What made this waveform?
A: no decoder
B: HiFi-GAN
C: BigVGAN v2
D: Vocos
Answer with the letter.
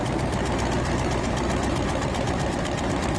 A